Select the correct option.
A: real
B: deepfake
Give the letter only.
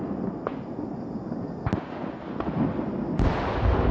A